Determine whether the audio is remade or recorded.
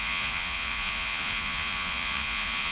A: remade